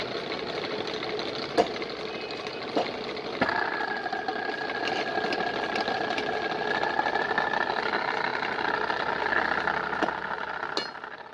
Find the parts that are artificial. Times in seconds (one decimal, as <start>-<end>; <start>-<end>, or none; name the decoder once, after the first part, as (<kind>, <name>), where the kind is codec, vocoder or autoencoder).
none